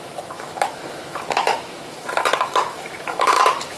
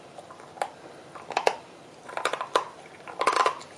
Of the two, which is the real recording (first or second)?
second